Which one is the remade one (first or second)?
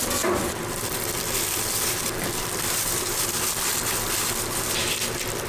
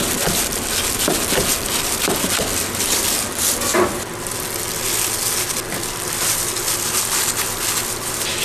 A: first